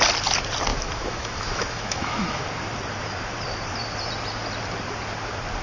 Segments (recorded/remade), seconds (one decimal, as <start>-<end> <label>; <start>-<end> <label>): 0.0-0.7 recorded; 0.7-2.4 remade; 2.4-5.6 recorded